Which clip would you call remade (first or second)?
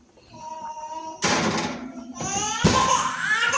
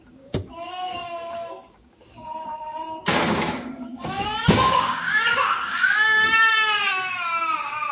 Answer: second